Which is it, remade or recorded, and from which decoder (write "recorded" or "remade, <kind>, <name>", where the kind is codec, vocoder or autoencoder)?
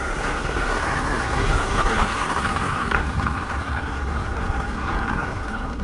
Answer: remade, codec, SNAC